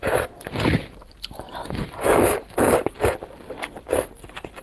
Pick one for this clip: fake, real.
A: fake